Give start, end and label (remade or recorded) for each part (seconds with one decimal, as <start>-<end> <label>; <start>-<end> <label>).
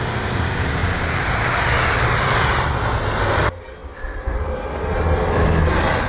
0.0-6.1 recorded